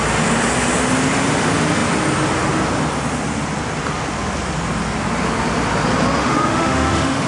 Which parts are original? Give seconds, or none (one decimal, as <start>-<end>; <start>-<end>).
0.0-6.2